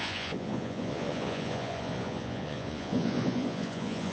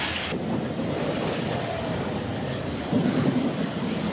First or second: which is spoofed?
first